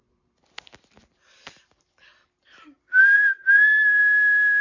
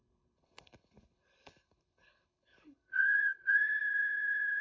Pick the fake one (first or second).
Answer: second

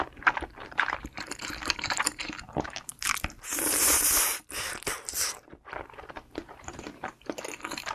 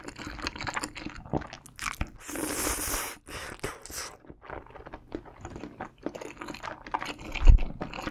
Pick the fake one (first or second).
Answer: first